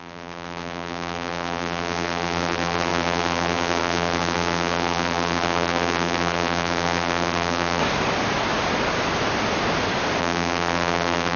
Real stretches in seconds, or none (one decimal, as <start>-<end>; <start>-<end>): 7.8-10.2